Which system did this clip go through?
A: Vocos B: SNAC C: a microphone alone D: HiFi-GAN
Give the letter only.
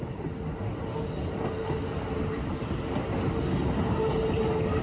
C